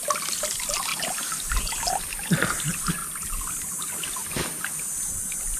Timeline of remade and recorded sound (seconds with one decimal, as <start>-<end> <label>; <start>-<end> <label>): 0.0-5.6 recorded